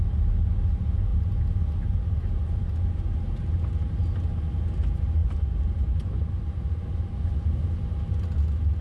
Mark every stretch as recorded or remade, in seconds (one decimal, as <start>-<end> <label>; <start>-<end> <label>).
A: 0.0-5.2 recorded; 5.2-6.8 remade; 6.8-8.8 recorded

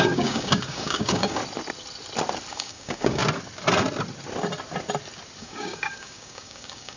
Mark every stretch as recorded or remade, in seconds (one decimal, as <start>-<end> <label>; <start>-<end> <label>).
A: 0.0-1.4 remade; 1.4-2.5 recorded; 2.5-3.2 remade; 3.2-5.4 recorded; 5.4-7.0 remade

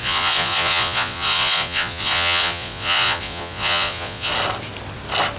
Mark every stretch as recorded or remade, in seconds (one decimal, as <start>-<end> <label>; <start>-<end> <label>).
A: 0.0-4.3 remade; 4.3-5.4 recorded

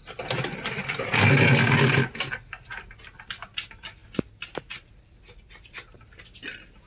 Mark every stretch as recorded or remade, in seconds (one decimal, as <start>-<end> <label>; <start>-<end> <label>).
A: 0.0-6.9 recorded

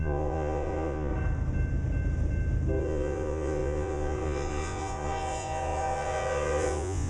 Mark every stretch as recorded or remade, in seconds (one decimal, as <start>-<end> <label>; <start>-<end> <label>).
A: 0.0-1.1 remade; 1.1-2.8 recorded; 2.8-7.1 remade